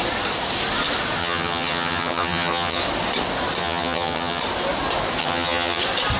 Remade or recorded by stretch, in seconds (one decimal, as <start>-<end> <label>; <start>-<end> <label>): 0.0-1.2 recorded; 1.2-2.8 remade; 2.8-3.6 recorded; 3.6-4.4 remade; 4.4-5.2 recorded; 5.2-5.8 remade; 5.8-6.2 recorded